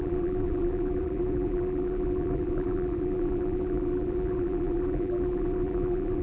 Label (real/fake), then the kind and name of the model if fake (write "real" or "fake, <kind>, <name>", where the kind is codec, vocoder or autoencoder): fake, vocoder, BigVGAN v2